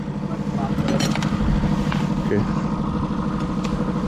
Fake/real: real